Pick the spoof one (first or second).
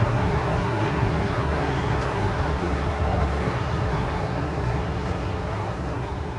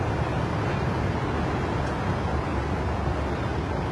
first